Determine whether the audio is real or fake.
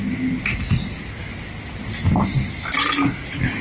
real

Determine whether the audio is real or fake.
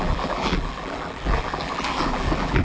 fake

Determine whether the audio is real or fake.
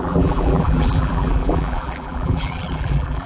fake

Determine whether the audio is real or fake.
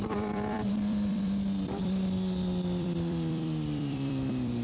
fake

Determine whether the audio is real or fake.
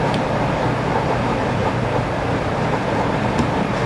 fake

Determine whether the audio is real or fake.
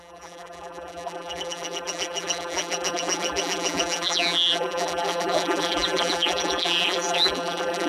fake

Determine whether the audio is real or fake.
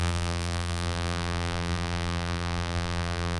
fake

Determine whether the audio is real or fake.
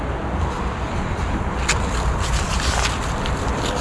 real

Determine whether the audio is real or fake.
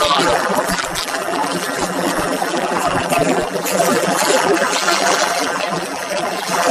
fake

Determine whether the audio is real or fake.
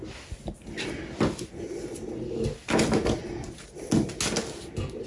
real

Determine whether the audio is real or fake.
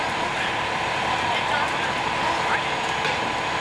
real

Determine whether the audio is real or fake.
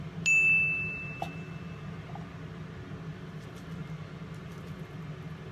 real